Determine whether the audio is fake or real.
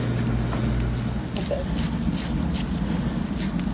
real